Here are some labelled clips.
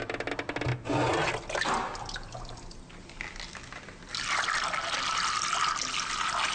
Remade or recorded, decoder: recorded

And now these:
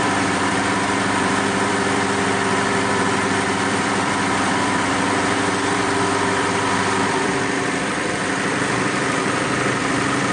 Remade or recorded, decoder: remade, vocoder, BigVGAN v2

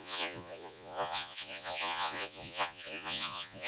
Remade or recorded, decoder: remade, vocoder, Vocos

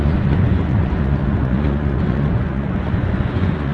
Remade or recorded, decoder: remade, vocoder, Vocos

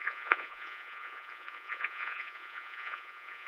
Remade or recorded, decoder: remade, vocoder, Vocos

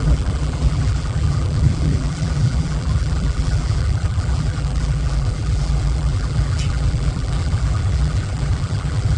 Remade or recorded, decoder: remade, vocoder, BigVGAN v2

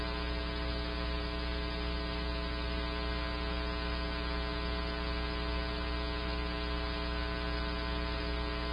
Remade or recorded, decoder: recorded